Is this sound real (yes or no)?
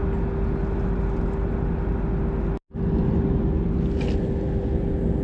yes